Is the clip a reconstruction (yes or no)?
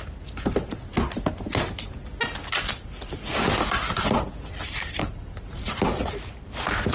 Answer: no